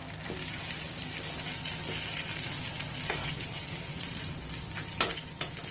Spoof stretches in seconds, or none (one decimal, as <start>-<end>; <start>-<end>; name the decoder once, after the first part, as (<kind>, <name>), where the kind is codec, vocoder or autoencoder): 3.2-4.4 (vocoder, WaveNeXt)